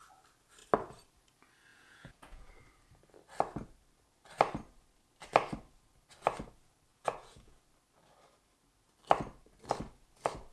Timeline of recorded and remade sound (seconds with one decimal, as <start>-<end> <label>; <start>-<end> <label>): 0.0-1.7 recorded; 1.7-2.5 remade; 2.5-6.9 recorded; 6.9-7.6 remade; 7.6-10.5 recorded